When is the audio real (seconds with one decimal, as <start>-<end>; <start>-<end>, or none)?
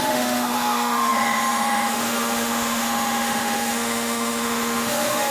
none